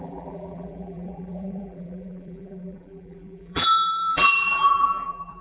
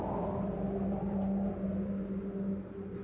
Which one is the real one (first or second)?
second